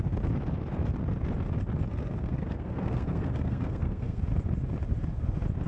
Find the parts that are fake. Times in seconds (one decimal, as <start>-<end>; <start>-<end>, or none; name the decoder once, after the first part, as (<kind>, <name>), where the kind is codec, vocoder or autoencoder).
1.9-4.2 (codec, SNAC)